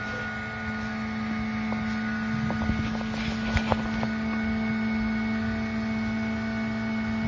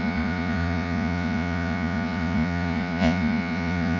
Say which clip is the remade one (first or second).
second